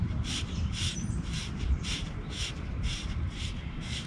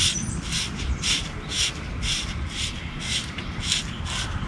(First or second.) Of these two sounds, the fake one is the first